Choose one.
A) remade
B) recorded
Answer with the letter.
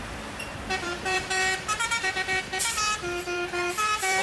A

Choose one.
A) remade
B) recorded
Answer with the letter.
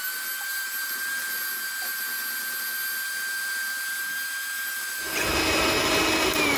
B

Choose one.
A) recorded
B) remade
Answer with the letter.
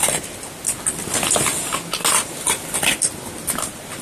A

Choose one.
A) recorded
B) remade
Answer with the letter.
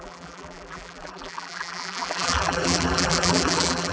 B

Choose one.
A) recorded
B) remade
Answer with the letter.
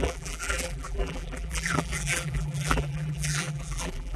B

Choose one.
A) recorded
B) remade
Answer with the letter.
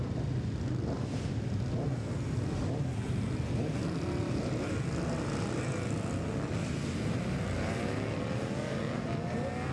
A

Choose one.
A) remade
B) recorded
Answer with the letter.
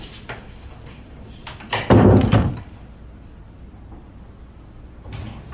B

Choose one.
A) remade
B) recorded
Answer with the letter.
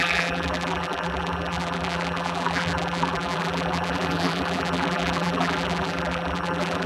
A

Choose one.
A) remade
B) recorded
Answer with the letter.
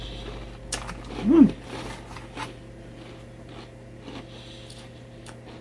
B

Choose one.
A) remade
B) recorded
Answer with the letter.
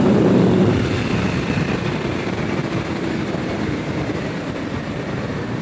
A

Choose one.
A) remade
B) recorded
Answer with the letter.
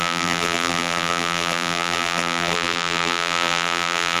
A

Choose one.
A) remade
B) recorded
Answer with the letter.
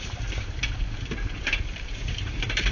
A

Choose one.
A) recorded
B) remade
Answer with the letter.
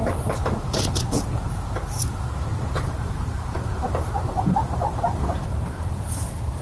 B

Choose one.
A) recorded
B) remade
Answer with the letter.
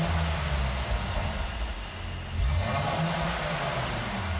A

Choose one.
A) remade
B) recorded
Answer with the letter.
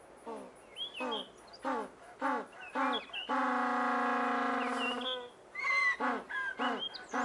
B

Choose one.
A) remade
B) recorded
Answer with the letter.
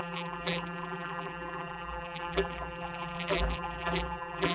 A